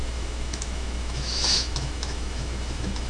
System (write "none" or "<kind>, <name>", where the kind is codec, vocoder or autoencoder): autoencoder, DAC-VAE